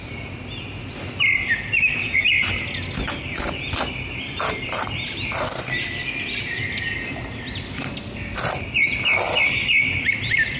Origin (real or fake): real